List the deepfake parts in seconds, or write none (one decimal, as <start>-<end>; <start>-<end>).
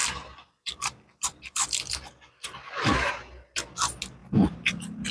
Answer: 0.0-3.1; 4.2-5.1